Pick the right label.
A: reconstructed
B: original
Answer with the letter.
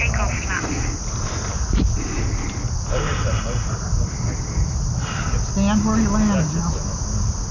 B